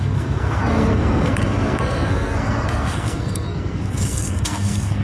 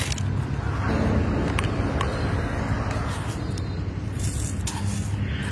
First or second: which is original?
second